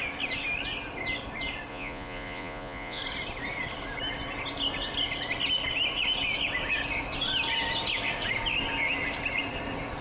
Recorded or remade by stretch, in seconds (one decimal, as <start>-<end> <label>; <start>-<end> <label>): 0.0-1.7 recorded; 1.7-3.0 remade; 3.0-10.0 recorded